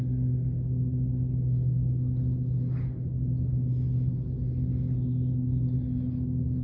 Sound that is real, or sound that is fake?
real